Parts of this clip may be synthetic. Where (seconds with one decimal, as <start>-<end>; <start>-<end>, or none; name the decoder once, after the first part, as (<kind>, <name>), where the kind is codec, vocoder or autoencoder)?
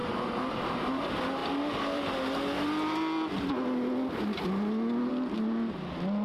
0.0-0.6 (vocoder, BigVGAN v2)